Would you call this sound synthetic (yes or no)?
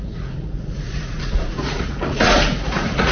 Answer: yes